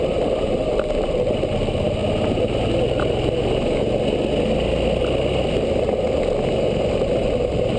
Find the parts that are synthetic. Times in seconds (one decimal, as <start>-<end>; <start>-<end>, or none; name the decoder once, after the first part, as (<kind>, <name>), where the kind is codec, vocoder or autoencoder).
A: none